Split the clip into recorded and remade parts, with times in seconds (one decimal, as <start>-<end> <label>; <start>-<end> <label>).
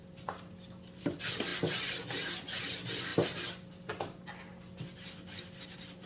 0.0-6.1 recorded